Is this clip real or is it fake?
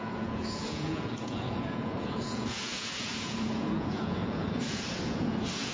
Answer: fake